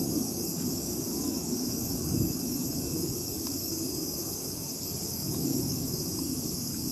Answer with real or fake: fake